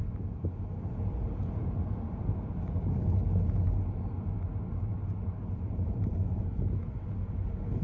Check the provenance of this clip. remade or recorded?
recorded